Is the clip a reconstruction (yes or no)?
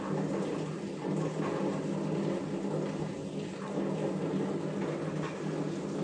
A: no